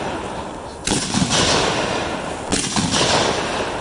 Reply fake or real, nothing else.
real